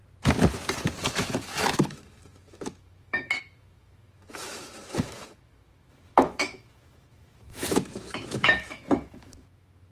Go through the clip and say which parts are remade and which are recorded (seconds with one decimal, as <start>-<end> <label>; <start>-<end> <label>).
0.0-1.0 recorded; 1.0-9.9 remade